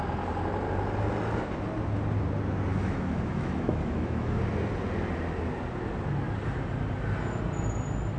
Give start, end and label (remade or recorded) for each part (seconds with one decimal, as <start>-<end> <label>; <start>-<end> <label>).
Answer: 0.0-2.7 recorded; 2.7-4.4 remade; 4.4-8.2 recorded